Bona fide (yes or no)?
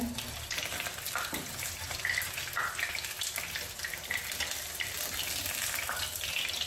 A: yes